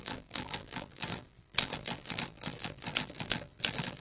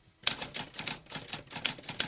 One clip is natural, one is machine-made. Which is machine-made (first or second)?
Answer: first